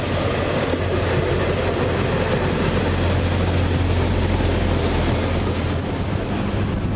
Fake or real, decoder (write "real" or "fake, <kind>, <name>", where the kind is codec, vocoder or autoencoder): real